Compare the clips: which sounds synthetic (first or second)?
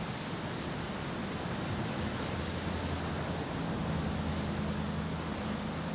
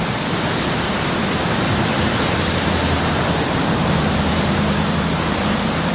second